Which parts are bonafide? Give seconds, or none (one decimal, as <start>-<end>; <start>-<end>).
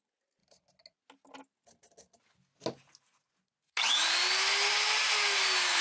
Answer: 0.0-5.8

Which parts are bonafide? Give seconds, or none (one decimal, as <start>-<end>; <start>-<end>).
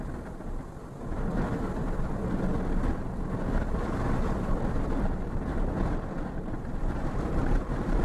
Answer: 0.0-6.8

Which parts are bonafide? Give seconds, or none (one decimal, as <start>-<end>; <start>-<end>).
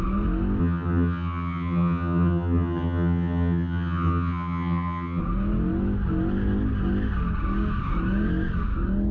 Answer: 0.0-0.6; 5.2-9.1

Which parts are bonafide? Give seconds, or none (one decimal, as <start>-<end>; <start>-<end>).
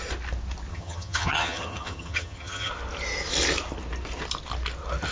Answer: 0.0-0.7; 2.7-5.1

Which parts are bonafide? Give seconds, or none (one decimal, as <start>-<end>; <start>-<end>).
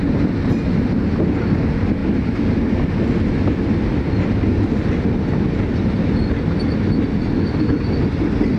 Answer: 0.0-8.6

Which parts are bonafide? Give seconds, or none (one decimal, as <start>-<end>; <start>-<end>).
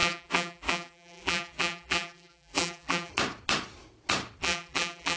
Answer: 3.1-4.4